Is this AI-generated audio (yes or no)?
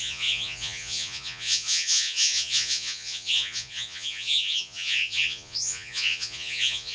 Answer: yes